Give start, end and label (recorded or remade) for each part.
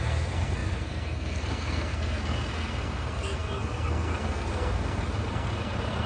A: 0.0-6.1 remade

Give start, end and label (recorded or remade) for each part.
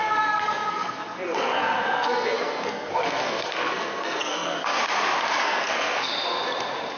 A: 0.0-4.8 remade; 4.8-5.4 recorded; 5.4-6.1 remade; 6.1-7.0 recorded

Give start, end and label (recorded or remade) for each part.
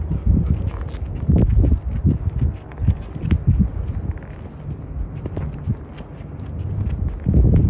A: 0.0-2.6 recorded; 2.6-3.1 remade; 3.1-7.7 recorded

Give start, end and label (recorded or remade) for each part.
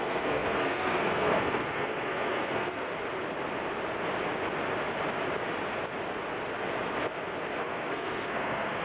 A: 0.0-2.9 remade; 2.9-7.6 recorded; 7.6-8.8 remade